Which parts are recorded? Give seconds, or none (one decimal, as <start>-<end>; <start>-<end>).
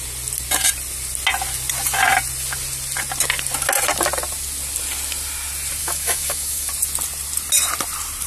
0.0-5.8; 6.7-8.3